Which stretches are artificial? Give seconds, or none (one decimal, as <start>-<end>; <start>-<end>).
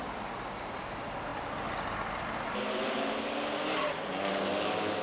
none